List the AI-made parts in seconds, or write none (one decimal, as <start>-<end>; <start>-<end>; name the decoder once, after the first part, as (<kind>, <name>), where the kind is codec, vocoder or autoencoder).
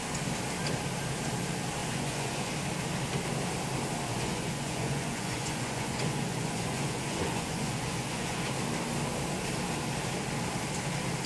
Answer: 1.8-2.5 (vocoder, Vocos); 4.1-8.5